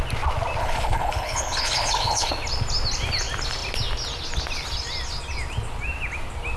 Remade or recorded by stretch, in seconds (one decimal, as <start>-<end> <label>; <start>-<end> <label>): 0.0-0.6 recorded; 0.6-2.3 remade; 2.3-6.6 recorded